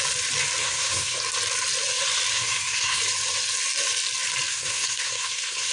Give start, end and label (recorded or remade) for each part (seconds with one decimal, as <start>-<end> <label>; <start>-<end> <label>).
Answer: 0.0-0.6 recorded; 0.6-1.2 remade; 1.2-2.3 recorded; 2.3-3.0 remade; 3.0-4.5 recorded; 4.5-5.7 remade